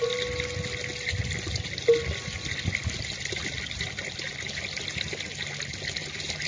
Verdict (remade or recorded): recorded